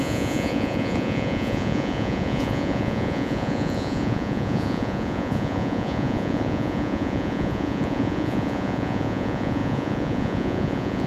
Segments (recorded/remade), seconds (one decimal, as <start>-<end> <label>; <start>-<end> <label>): 0.0-11.1 remade